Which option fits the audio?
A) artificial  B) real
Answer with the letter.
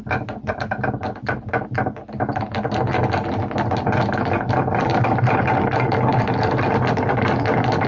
B